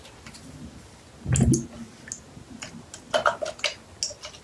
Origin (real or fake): real